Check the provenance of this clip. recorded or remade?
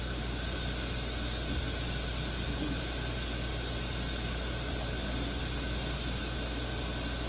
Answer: recorded